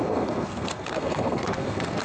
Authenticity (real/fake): fake